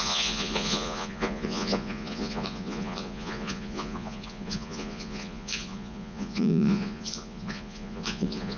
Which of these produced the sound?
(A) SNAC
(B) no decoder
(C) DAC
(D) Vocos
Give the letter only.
D